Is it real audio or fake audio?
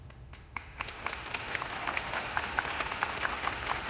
fake